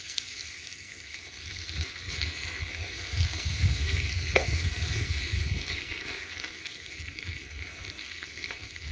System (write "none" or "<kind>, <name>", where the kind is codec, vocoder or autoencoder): codec, SNAC